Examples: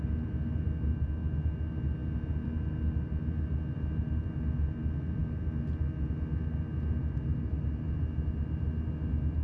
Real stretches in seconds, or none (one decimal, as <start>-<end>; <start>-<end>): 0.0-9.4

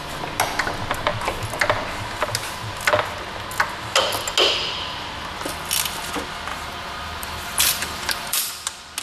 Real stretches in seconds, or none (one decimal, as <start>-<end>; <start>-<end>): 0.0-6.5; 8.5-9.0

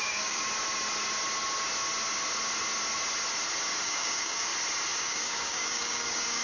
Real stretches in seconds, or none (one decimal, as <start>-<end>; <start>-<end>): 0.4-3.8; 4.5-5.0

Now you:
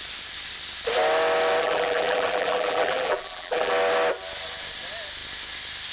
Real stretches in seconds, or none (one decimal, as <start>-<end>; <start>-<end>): 0.0-1.6; 3.7-5.9